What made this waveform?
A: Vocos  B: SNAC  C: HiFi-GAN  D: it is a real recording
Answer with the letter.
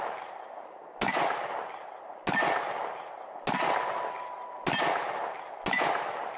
D